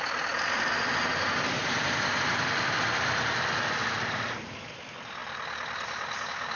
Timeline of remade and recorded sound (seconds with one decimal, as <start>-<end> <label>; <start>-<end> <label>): 0.0-6.6 recorded